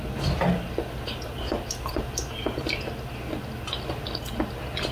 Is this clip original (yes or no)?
yes